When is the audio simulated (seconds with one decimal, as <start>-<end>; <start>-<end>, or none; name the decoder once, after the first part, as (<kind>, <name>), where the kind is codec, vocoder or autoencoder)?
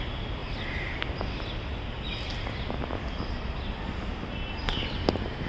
none